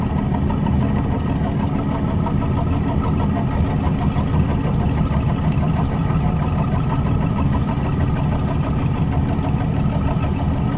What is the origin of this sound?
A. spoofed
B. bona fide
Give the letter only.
B